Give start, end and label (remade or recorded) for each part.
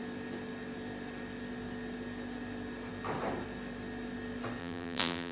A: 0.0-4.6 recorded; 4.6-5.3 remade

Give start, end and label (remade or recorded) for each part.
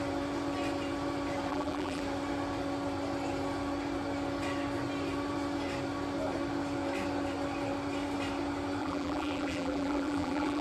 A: 0.0-1.5 recorded; 1.5-2.0 remade; 2.0-8.8 recorded; 8.8-10.6 remade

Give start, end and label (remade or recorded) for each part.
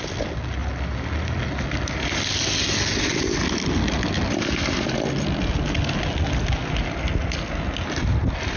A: 0.0-8.6 recorded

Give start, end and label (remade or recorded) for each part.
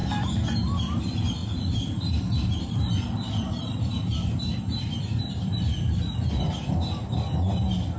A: 0.0-1.4 recorded; 1.4-6.2 remade; 6.2-8.0 recorded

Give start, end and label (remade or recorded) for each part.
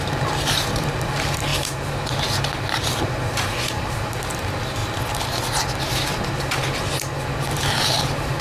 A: 0.0-4.8 remade; 4.8-7.2 recorded; 7.2-8.4 remade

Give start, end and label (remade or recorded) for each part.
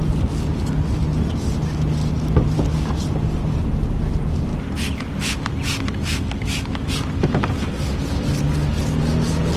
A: 0.0-9.6 recorded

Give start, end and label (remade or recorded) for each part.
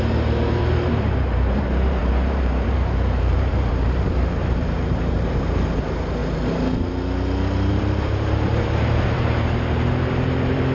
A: 0.0-6.2 remade; 6.2-7.7 recorded; 7.7-10.7 remade